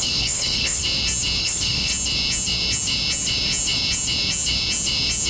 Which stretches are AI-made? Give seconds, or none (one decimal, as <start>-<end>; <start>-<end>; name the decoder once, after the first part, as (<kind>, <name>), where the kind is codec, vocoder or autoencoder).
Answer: 0.0-0.8 (codec, HILCodec); 1.4-1.9